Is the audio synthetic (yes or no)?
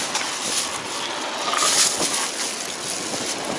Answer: no